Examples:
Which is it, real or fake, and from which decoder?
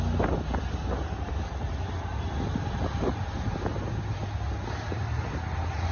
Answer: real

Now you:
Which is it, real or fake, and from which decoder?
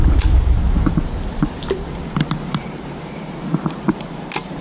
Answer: real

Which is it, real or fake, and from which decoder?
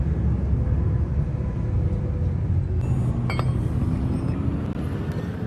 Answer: real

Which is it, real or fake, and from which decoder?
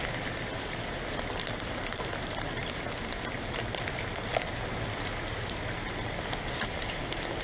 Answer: real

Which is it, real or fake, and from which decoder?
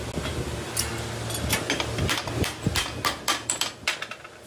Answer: real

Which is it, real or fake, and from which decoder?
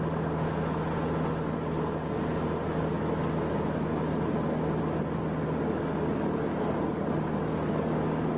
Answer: real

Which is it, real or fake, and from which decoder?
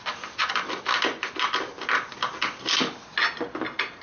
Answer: real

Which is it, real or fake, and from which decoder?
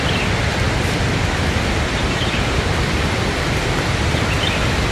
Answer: fake, vocoder, BigVGAN v2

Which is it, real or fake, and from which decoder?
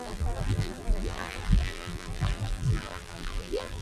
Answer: fake, vocoder, BigVGAN v2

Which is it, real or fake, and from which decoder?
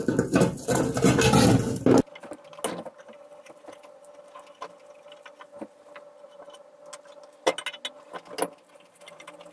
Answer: real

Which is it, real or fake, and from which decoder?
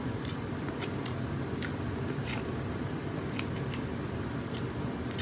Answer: fake, vocoder, BigVGAN v2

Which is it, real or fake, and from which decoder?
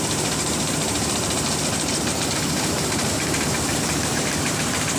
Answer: fake, vocoder, BigVGAN v2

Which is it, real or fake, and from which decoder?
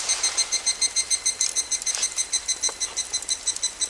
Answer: fake, vocoder, BigVGAN v2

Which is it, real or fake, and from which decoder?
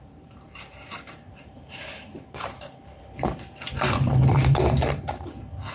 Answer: fake, vocoder, BigVGAN v2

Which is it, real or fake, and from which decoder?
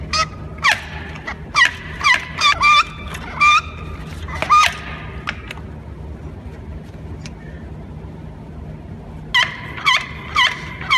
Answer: real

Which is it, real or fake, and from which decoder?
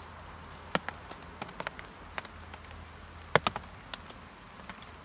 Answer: real